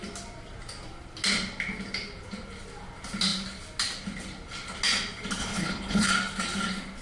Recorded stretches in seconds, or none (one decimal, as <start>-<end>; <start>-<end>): 0.0-5.4; 6.1-7.0